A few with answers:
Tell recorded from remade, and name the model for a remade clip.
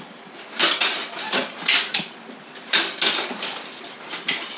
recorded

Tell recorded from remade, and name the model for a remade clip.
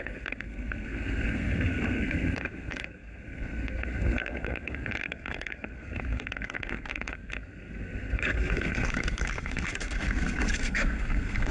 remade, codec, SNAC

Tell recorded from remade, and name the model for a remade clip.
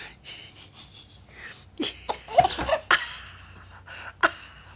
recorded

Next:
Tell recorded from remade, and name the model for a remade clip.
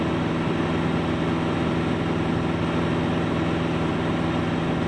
recorded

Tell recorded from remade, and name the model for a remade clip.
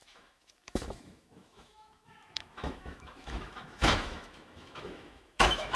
remade, autoencoder, DAC-VAE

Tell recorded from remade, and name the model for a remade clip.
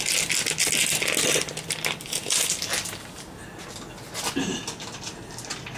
recorded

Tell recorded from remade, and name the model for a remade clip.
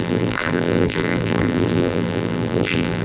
remade, vocoder, BigVGAN v2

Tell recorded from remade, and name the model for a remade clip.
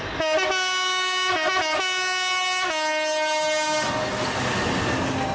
recorded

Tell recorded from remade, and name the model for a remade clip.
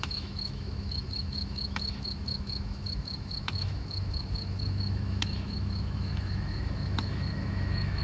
remade, autoencoder, DAC-VAE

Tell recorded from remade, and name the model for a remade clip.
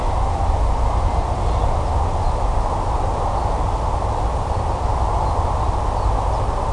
recorded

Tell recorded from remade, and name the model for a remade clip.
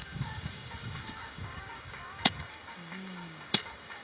remade, codec, DAC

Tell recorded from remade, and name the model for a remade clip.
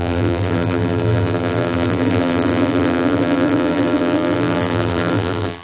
remade, vocoder, BigVGAN v2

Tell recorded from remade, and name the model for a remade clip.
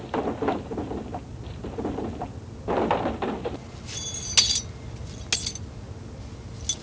recorded